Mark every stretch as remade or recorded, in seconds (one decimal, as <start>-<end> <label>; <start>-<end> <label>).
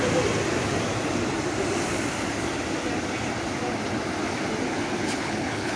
0.0-5.0 recorded; 5.0-5.8 remade